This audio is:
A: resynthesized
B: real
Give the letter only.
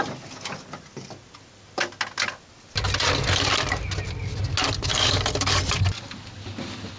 B